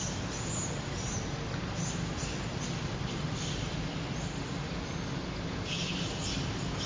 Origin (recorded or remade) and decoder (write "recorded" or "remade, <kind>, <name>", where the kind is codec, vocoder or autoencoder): recorded